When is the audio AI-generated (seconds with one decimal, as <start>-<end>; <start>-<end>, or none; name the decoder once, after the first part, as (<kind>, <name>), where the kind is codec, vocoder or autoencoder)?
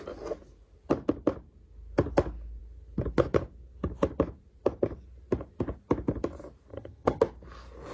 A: 6.7-7.2 (vocoder, HiFi-GAN)